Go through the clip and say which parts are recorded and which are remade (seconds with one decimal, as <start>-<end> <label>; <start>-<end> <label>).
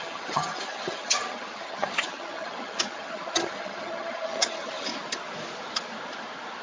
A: 0.0-4.9 remade; 4.9-6.6 recorded